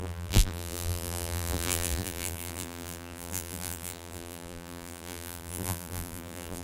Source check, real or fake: fake